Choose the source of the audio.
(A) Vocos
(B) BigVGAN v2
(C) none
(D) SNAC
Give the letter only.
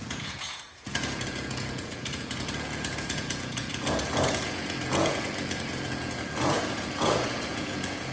A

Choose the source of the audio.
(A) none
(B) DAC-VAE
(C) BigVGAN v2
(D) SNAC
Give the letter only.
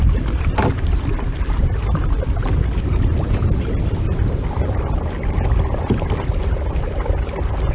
A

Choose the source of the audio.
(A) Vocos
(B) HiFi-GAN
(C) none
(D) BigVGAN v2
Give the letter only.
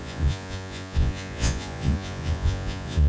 A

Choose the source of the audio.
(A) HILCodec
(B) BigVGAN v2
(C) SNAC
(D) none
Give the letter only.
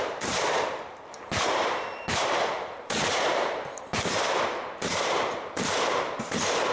B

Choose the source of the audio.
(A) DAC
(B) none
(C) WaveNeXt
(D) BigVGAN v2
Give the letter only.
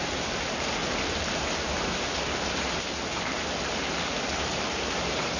D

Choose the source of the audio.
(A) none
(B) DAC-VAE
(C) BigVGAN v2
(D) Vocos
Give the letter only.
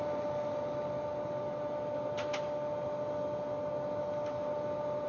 A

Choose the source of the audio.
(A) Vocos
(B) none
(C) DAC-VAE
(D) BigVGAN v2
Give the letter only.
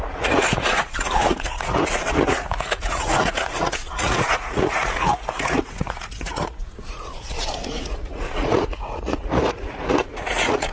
A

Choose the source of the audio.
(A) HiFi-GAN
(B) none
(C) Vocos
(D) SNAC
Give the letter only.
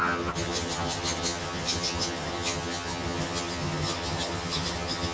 A